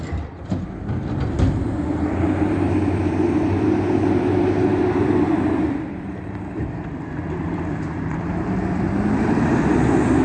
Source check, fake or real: fake